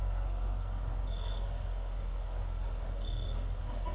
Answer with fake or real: fake